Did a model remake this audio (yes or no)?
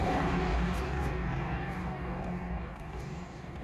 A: yes